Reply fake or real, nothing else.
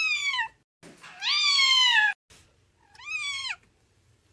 real